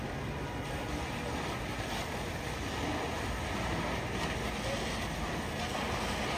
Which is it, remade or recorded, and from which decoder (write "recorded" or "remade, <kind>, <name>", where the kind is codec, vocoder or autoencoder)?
recorded